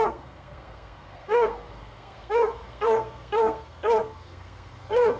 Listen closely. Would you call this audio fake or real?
fake